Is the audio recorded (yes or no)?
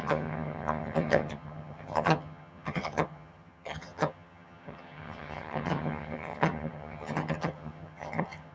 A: no